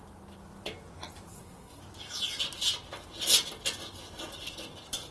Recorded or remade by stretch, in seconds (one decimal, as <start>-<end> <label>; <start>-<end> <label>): 0.0-1.3 recorded; 1.3-1.8 remade; 1.8-5.1 recorded